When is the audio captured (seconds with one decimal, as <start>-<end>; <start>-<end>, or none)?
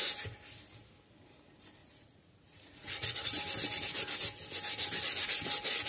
0.0-1.8; 3.3-5.9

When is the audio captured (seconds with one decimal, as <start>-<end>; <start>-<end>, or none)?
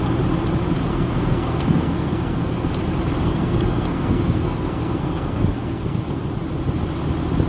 0.0-0.9; 2.7-3.2; 6.3-7.5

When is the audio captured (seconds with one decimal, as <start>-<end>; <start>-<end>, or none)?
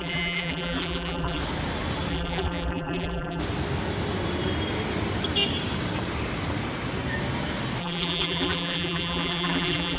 1.4-2.1; 3.4-7.8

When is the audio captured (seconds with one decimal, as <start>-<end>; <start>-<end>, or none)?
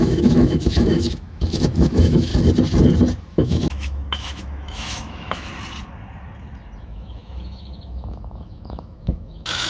2.3-3.3; 5.5-6.8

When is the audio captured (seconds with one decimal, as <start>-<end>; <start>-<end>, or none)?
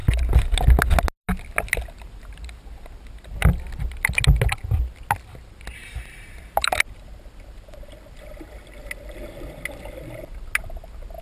0.0-5.8; 6.7-11.2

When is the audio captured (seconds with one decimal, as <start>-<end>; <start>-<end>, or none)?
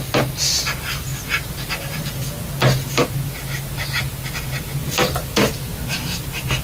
0.0-4.8; 5.6-6.6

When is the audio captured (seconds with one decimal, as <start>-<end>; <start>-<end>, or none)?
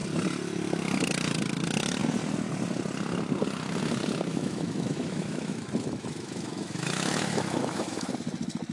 0.0-4.3; 8.1-8.7